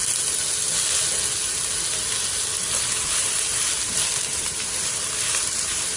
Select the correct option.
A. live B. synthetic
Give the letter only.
A